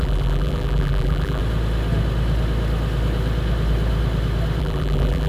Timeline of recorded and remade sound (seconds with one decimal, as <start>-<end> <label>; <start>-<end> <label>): 0.0-1.4 remade; 1.4-4.6 recorded; 4.6-5.3 remade